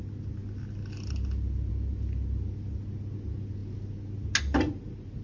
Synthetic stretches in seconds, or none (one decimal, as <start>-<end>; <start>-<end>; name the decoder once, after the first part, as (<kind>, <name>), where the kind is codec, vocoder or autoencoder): none